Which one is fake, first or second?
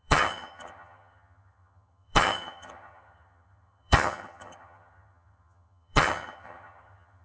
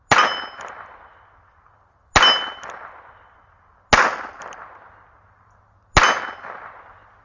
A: first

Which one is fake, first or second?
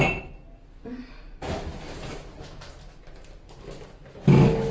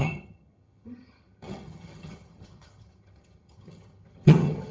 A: second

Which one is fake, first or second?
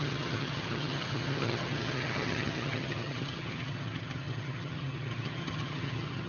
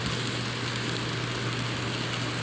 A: first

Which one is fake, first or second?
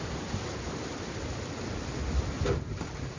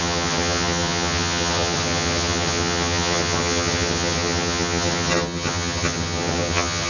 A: second